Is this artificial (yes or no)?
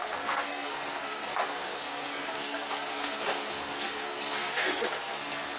yes